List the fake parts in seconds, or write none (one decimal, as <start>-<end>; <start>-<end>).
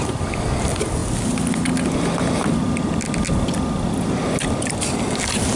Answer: none